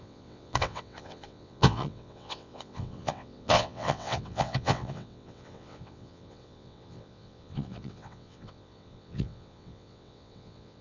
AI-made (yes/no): yes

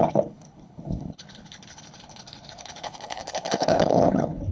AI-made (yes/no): yes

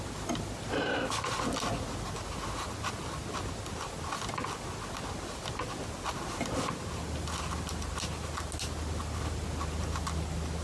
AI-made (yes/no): no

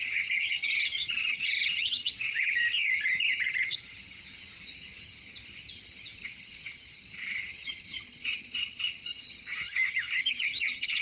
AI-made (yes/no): yes